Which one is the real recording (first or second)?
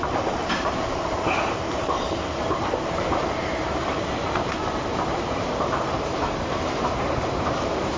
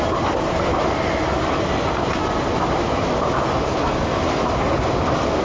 second